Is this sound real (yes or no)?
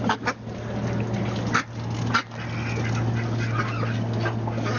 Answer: yes